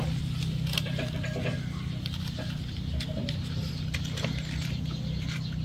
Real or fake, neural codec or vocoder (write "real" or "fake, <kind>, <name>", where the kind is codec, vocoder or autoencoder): real